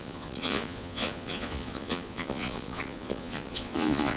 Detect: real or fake fake